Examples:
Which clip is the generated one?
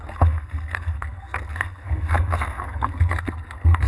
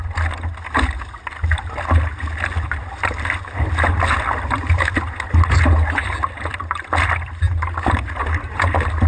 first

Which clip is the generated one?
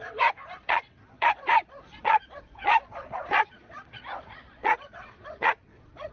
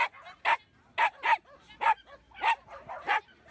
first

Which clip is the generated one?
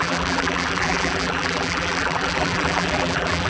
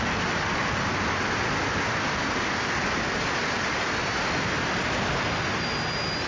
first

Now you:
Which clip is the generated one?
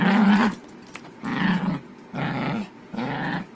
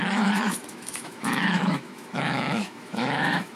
second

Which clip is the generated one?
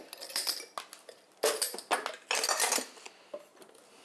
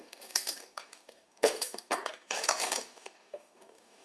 second